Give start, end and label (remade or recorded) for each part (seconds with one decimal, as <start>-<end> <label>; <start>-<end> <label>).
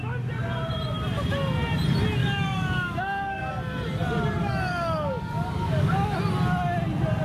0.0-2.2 recorded; 2.2-3.5 remade; 3.5-4.4 recorded; 4.4-6.2 remade; 6.2-7.2 recorded